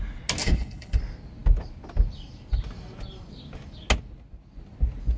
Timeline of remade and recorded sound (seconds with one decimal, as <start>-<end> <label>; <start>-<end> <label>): 0.0-0.4 recorded; 0.4-1.0 remade; 1.0-5.2 recorded